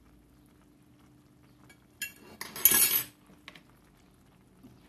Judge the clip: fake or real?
real